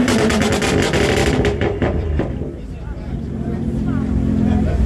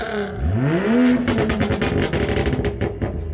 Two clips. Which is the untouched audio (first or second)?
second